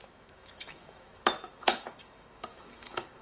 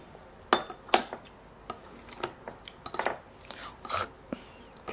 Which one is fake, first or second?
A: first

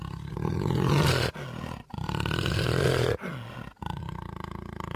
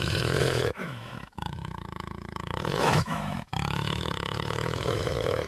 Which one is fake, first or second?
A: second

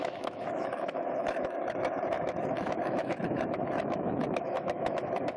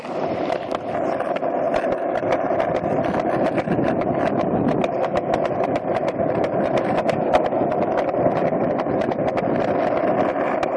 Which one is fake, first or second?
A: first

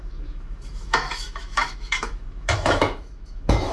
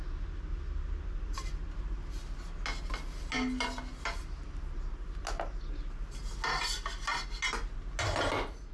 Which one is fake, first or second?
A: first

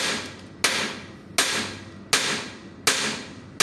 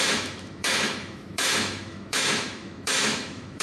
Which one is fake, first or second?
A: second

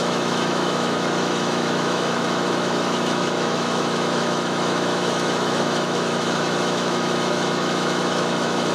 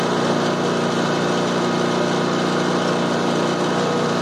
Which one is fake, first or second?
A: first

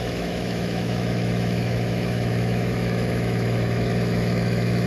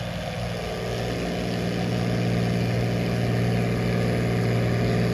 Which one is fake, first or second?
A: first